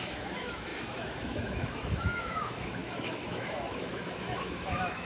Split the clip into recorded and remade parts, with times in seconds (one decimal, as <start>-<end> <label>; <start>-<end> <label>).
0.0-5.0 remade